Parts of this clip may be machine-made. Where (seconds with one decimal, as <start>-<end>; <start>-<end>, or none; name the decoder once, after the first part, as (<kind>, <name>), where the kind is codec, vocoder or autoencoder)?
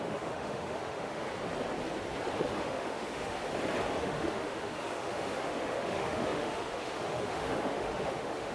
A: 0.0-1.2 (autoencoder, DAC-VAE); 2.4-3.4; 4.0-8.5